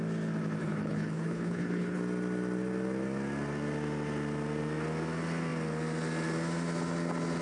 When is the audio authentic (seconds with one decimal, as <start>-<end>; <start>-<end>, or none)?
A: 0.0-0.6; 2.0-7.4